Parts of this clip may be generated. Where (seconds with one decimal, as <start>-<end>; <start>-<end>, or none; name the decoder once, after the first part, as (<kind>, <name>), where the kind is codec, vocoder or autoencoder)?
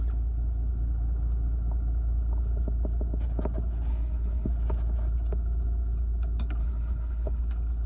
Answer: 3.9-4.5 (codec, HILCodec); 6.6-7.4